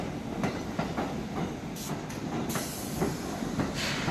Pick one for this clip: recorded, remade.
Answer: recorded